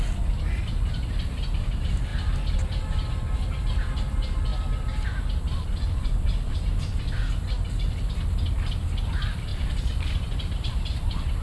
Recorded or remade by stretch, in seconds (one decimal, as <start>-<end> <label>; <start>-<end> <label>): 0.0-2.1 recorded; 2.1-3.1 remade; 3.1-9.5 recorded; 9.5-10.7 remade; 10.7-11.4 recorded